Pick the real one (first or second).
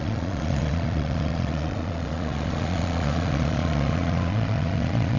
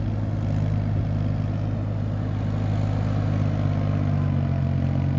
second